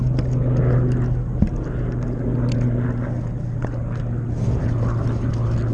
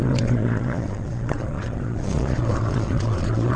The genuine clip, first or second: first